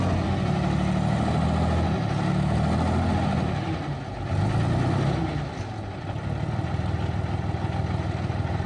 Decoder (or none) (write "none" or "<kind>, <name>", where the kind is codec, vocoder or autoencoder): none